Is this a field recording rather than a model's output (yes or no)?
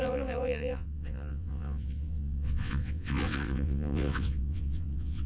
no